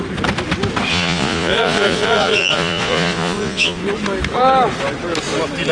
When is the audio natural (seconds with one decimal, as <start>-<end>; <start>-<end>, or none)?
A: 0.0-0.9; 3.8-5.7